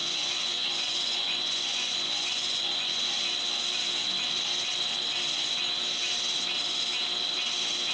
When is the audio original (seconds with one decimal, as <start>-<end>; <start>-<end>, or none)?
3.1-7.9

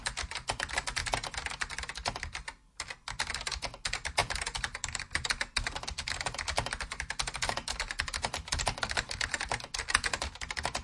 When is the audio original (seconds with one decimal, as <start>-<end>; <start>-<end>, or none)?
0.0-10.8

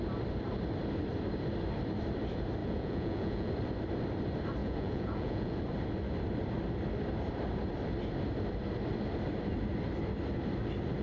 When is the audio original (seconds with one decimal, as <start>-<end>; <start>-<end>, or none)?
0.0-2.6; 3.5-4.6; 5.6-11.0